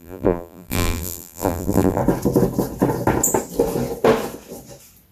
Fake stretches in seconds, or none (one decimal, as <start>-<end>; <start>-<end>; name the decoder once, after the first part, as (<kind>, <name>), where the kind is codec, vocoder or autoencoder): 0.0-2.0 (vocoder, BigVGAN v2)